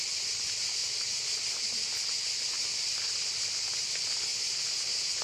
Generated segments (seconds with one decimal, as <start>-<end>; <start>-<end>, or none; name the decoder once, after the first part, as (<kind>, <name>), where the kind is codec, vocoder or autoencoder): none